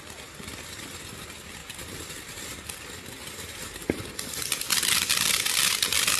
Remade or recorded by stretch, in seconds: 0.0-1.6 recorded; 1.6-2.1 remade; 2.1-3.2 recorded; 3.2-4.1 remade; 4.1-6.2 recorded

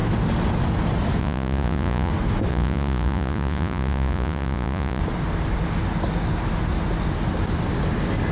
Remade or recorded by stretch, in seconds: 0.0-1.2 recorded; 1.2-2.1 remade; 2.1-2.5 recorded; 2.5-5.0 remade; 5.0-8.3 recorded

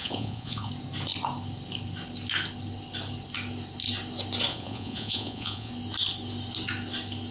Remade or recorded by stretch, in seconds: 0.0-0.7 remade; 0.7-4.5 recorded; 4.5-5.7 remade; 5.7-7.3 recorded

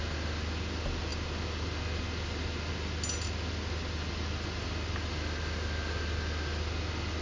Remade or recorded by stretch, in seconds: 0.0-7.2 recorded

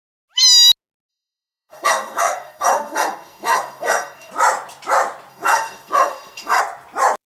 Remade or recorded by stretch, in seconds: 0.0-1.1 recorded; 1.1-4.3 remade; 4.3-5.3 recorded; 5.3-6.6 remade; 6.6-7.3 recorded

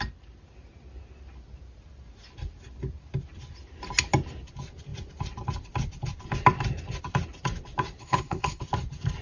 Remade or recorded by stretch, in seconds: 0.0-8.0 recorded; 8.0-8.6 remade; 8.6-9.2 recorded

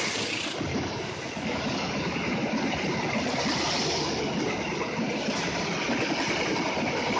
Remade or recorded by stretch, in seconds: 0.0-0.7 recorded; 0.7-2.3 remade; 2.3-7.2 recorded